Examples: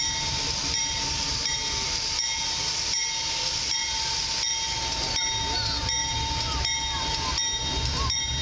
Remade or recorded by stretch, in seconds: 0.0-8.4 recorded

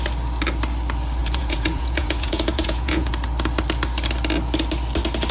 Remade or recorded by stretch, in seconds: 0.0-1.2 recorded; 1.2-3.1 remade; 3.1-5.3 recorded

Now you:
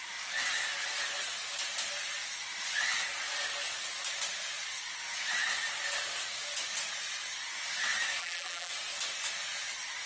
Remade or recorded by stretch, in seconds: 0.0-8.2 recorded; 8.2-8.7 remade; 8.7-10.1 recorded

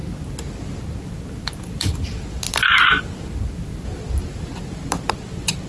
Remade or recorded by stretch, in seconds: 0.0-1.6 recorded; 1.6-3.7 remade; 3.7-5.1 recorded; 5.1-5.7 remade

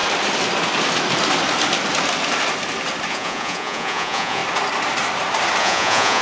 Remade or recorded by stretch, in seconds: 0.0-3.1 recorded; 3.1-4.4 remade; 4.4-5.6 recorded; 5.6-6.2 remade

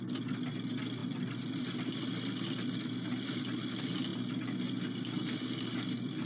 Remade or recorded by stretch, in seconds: 0.0-6.3 recorded